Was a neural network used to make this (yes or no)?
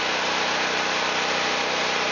no